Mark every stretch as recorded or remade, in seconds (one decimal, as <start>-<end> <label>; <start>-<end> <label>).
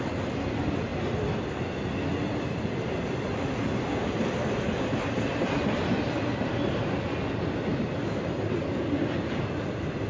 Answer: 0.0-10.1 recorded